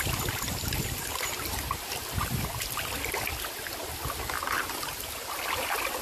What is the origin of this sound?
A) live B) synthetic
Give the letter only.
A